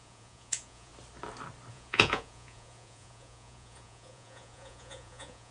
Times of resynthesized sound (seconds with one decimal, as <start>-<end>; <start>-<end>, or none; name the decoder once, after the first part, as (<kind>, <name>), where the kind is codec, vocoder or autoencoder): 0.0-0.9 (vocoder, Vocos); 1.7-5.5